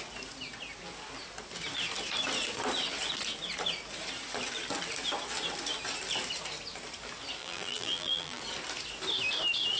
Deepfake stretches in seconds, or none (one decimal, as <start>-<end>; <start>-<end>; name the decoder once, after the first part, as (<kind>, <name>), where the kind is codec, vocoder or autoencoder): 7.4-8.4 (vocoder, BigVGAN v2)